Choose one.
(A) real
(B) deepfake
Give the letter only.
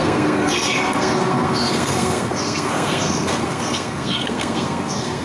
B